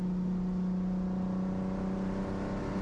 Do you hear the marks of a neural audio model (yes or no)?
no